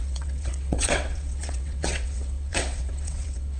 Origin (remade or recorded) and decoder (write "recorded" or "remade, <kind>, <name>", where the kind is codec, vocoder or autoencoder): remade, vocoder, WaveNeXt